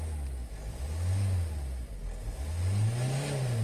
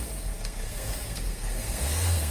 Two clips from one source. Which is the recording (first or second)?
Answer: first